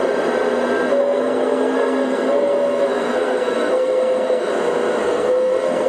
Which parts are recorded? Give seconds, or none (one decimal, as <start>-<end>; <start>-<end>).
0.0-1.0; 4.5-5.0